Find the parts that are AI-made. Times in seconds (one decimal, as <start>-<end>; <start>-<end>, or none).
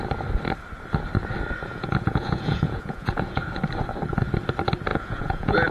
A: 1.7-3.4; 4.9-5.7